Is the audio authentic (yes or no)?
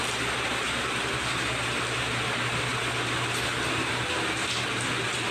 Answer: yes